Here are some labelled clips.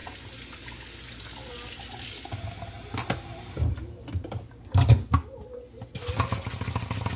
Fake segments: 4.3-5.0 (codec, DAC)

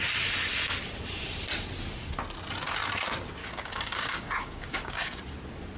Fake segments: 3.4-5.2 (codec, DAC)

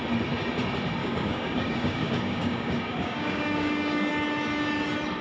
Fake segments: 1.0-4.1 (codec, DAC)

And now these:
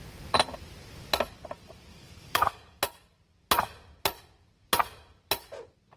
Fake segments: 1.9-2.8 (codec, DAC)

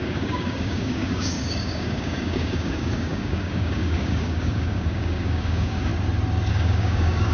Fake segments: 0.0-5.9 (codec, DAC); 6.5-7.3

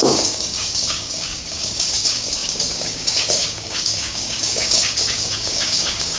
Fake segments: 0.0-6.2 (codec, DAC)